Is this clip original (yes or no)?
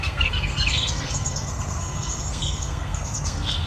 no